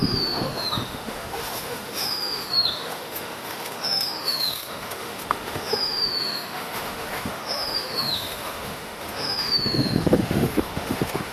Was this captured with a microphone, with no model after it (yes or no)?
no